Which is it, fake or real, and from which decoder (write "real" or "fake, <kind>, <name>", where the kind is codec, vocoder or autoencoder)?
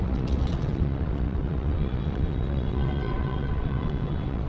fake, vocoder, WaveNeXt